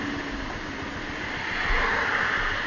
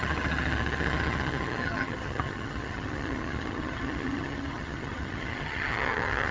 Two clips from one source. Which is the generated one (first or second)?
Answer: second